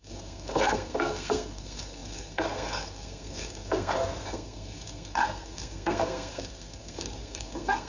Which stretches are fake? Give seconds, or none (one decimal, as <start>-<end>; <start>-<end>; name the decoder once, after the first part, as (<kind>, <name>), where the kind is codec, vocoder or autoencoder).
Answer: 0.0-7.9 (codec, SNAC)